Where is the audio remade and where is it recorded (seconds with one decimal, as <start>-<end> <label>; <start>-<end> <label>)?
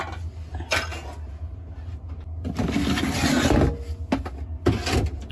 0.0-5.3 recorded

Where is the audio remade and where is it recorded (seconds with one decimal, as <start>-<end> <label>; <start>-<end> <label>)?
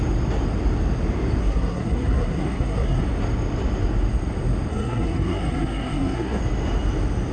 0.0-1.4 recorded; 1.4-3.0 remade; 3.0-4.7 recorded; 4.7-6.4 remade; 6.4-7.3 recorded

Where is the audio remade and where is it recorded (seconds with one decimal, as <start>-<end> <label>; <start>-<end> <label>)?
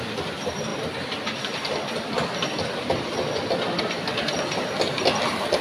0.0-5.6 recorded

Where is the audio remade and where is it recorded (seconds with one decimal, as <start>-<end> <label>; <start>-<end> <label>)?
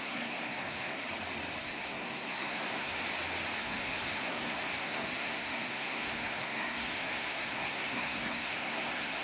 0.0-1.0 remade; 1.0-1.6 recorded; 1.6-3.0 remade; 3.0-3.6 recorded; 3.6-9.2 remade